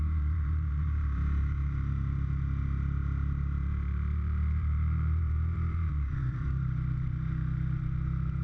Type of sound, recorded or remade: remade